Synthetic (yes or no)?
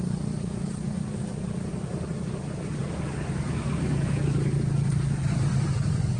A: no